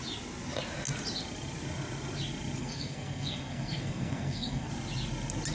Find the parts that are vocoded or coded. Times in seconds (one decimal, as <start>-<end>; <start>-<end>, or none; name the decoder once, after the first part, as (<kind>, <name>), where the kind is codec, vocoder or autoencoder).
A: 2.6-4.7 (codec, SNAC)